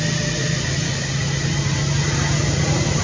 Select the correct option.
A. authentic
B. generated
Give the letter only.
A